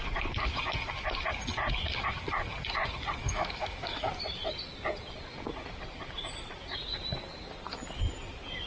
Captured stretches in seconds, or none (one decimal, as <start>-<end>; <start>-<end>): 0.0-3.2; 4.1-8.7